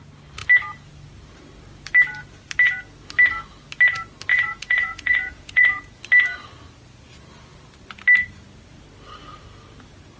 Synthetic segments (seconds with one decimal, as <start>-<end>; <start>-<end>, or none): 4.3-6.0